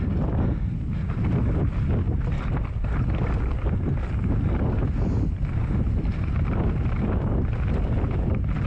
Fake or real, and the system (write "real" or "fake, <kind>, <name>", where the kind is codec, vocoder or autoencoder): real